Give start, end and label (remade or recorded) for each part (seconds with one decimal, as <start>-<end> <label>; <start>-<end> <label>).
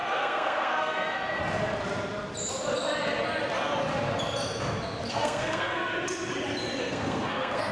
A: 0.0-1.4 remade; 1.4-5.1 recorded; 5.1-5.9 remade; 5.9-6.8 recorded; 6.8-7.7 remade